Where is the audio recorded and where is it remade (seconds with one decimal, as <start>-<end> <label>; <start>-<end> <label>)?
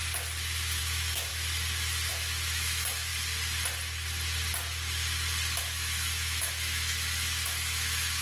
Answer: 0.0-0.8 recorded; 0.8-1.3 remade; 1.3-2.1 recorded; 2.1-3.1 remade; 3.1-5.6 recorded; 5.6-8.2 remade